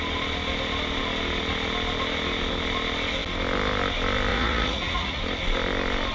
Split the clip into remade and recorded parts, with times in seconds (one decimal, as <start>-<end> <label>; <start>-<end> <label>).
0.0-4.3 recorded; 4.3-5.2 remade; 5.2-6.1 recorded